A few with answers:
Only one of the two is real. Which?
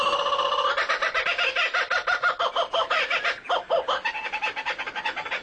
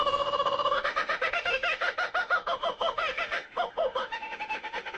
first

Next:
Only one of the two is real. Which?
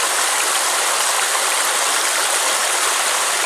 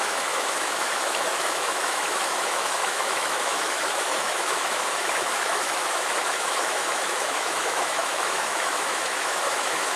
first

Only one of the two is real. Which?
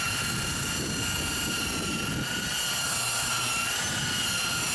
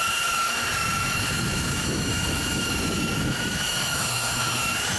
first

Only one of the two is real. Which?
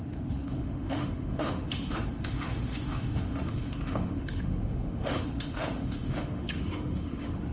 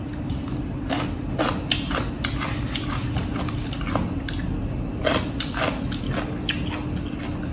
second